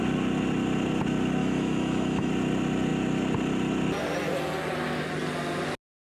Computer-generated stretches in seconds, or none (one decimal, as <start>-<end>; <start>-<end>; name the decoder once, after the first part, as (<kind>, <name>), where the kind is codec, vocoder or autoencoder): 1.4-2.3 (autoencoder, DAC-VAE)